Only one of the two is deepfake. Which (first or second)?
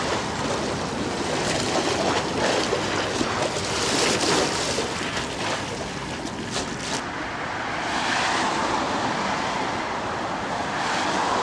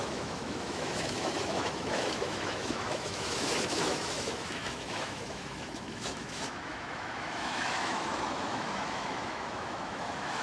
second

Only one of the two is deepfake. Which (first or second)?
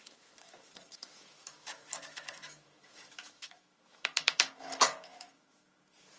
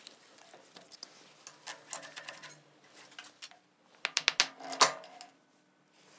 first